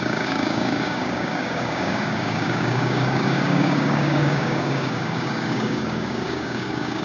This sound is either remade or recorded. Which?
remade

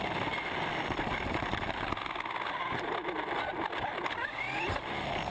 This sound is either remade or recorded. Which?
recorded